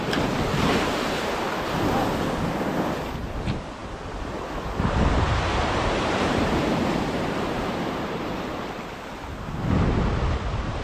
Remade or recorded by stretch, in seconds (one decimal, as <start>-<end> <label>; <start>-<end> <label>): 0.0-0.5 recorded; 0.5-1.3 remade; 1.3-5.5 recorded; 5.5-9.0 remade; 9.0-10.8 recorded